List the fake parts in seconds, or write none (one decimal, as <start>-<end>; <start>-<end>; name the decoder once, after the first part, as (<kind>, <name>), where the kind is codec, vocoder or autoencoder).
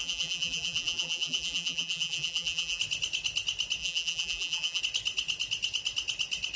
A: 0.0-2.8 (vocoder, BigVGAN v2); 3.8-4.8